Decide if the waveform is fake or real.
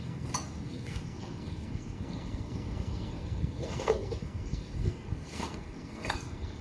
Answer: fake